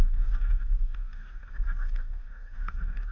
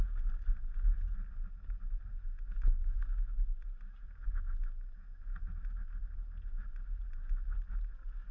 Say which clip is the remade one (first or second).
first